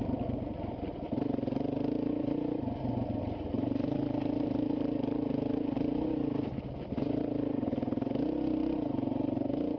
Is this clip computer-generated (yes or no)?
no